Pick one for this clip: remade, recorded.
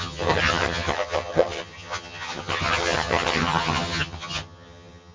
remade